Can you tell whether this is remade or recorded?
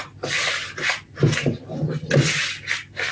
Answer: recorded